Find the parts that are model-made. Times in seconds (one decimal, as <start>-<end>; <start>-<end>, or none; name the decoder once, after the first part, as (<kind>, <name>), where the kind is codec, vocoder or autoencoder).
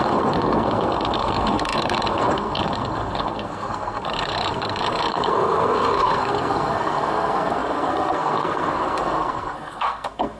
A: 0.0-10.4 (codec, SNAC)